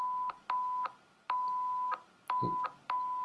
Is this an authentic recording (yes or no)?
yes